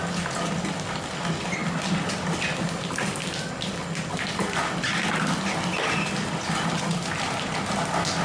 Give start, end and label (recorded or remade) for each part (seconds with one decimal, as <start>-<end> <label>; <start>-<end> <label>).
0.0-8.2 recorded